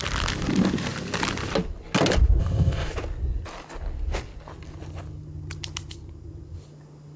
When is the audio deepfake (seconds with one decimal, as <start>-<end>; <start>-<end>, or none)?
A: 2.4-2.9